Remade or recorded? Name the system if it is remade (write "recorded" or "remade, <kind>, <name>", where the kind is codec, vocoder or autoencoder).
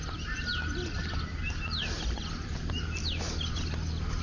recorded